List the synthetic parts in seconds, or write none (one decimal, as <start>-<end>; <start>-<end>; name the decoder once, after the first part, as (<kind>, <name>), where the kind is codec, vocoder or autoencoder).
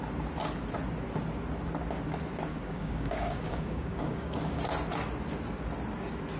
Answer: 2.5-4.6 (codec, DAC)